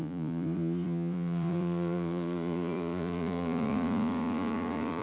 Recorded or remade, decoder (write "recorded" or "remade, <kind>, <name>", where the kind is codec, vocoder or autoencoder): remade, vocoder, Vocos